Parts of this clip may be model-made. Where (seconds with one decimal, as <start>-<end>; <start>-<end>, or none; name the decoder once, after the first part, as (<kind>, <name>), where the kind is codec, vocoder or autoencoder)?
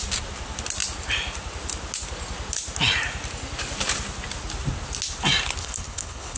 5.6-6.4 (codec, HILCodec)